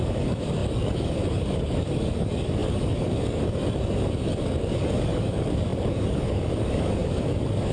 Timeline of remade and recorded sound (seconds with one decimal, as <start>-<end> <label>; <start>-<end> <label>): 0.0-7.7 remade